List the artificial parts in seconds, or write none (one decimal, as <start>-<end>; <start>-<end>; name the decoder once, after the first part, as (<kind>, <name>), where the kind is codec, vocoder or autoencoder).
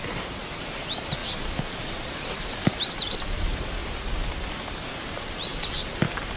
0.0-3.8 (vocoder, BigVGAN v2); 4.7-5.5